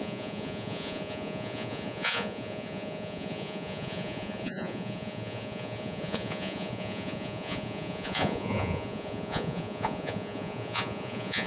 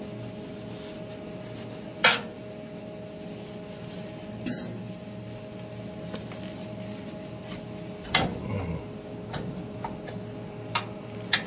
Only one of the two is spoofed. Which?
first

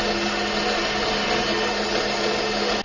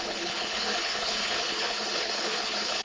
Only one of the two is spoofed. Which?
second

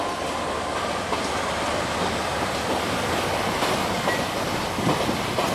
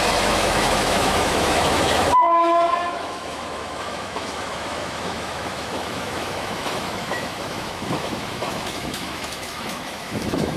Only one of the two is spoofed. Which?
second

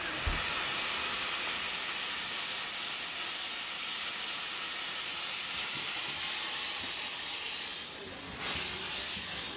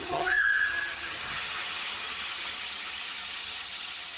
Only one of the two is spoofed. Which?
second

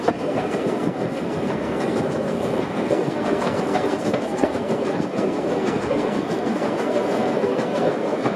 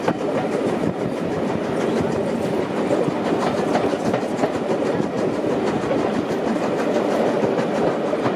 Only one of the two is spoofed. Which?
first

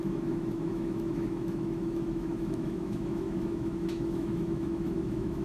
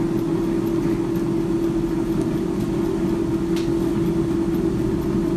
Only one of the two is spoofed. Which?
first